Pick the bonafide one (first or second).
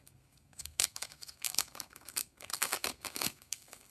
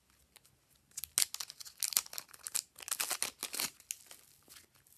second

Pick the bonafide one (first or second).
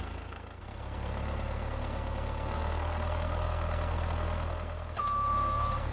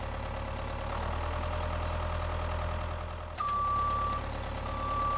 second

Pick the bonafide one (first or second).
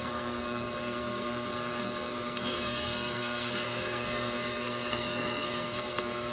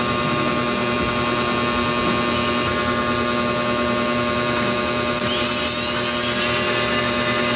second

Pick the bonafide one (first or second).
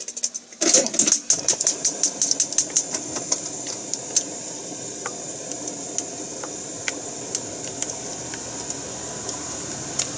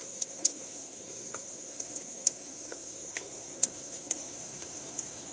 first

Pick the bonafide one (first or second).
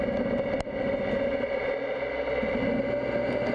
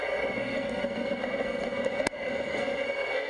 first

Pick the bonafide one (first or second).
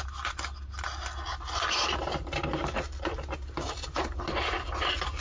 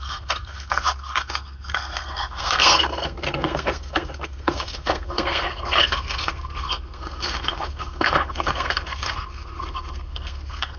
first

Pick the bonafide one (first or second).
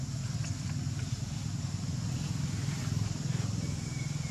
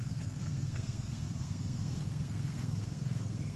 first